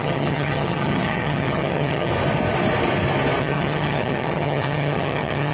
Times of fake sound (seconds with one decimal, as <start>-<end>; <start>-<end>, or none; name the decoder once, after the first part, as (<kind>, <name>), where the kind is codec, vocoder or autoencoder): 0.0-2.1 (vocoder, HiFi-GAN); 3.4-5.5